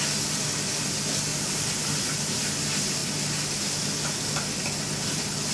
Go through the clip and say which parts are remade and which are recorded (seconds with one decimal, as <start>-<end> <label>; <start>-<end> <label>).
0.0-1.3 recorded; 1.3-2.4 remade; 2.4-5.5 recorded